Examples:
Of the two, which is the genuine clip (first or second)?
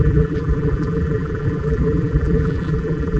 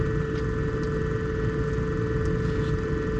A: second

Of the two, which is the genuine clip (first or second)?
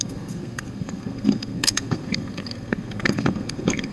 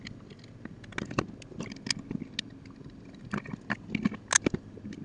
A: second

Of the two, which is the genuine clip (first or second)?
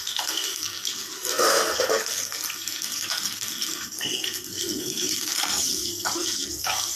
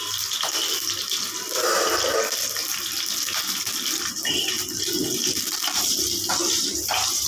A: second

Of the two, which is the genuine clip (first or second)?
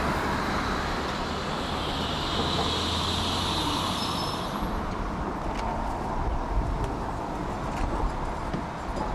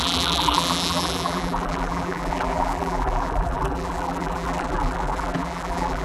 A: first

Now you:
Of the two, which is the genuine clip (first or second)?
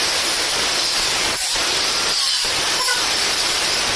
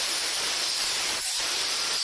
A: first